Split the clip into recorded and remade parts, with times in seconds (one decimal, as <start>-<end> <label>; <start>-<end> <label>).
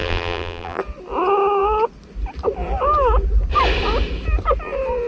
0.0-0.8 remade; 0.8-5.1 recorded